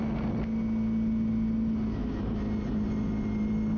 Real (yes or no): yes